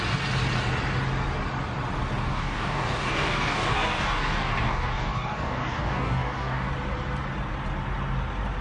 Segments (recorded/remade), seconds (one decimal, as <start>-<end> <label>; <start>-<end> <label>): 0.0-2.2 recorded; 2.2-6.7 remade; 6.7-8.6 recorded